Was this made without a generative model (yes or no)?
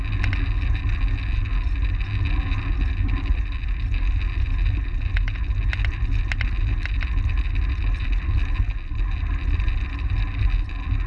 yes